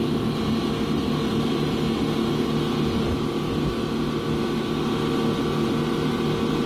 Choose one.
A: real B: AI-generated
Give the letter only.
A